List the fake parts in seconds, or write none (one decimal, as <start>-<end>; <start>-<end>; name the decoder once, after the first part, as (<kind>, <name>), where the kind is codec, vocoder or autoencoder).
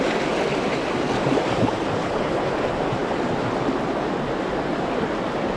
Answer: 2.0-2.5 (codec, HILCodec)